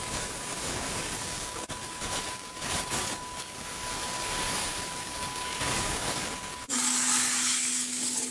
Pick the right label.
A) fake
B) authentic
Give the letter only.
A